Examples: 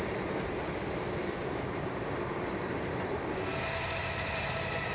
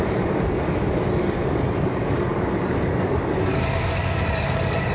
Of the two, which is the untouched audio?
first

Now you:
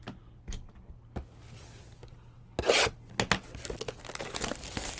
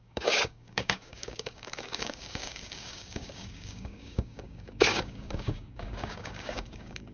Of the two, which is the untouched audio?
first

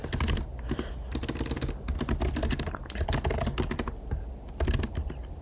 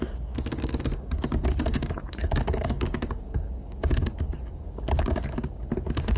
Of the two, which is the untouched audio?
first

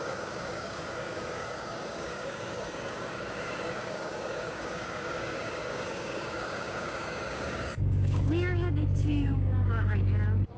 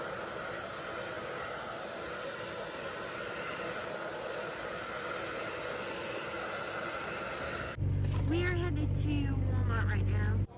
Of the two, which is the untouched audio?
second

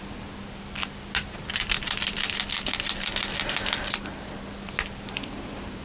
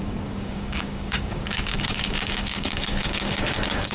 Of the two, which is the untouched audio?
first